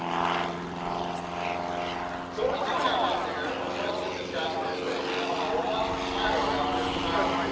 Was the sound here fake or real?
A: real